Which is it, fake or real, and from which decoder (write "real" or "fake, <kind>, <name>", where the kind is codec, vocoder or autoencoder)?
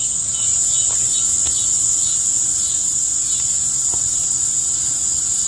real